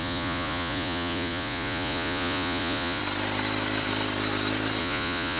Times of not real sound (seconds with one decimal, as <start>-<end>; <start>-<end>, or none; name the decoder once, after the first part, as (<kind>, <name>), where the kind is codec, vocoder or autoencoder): 0.0-3.0 (vocoder, Vocos); 4.8-5.4